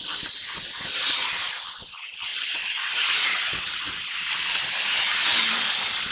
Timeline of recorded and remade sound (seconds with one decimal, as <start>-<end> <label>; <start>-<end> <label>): 0.0-6.1 remade